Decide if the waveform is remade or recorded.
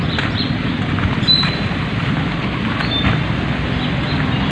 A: recorded